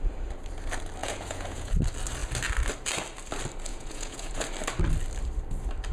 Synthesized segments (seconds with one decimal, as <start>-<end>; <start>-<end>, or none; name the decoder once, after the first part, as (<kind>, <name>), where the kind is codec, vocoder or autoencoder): 1.0-1.7 (vocoder, Vocos); 3.7-4.4